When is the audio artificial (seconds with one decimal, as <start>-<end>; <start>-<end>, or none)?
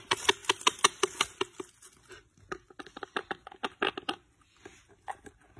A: 0.4-1.1